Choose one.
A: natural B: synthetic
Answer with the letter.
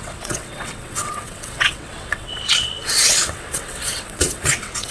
B